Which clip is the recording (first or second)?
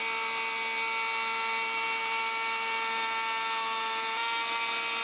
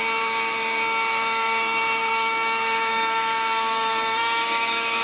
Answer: first